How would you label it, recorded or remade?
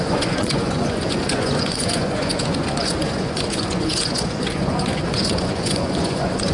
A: remade